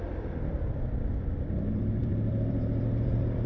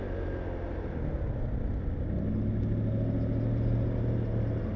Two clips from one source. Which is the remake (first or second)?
first